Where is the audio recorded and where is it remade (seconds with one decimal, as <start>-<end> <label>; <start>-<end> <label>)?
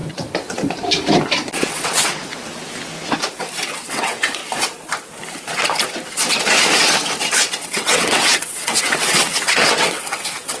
0.0-1.5 recorded; 1.5-2.3 remade; 2.3-3.9 recorded; 3.9-4.4 remade; 4.4-7.4 recorded; 7.4-10.6 remade